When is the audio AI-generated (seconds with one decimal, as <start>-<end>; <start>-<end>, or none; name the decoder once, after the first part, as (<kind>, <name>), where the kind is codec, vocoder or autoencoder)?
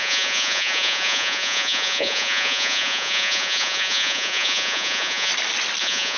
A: 0.0-5.3 (vocoder, Vocos); 5.8-6.2